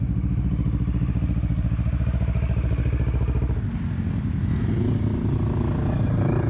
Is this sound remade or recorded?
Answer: recorded